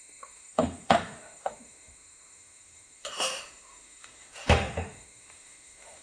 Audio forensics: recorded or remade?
remade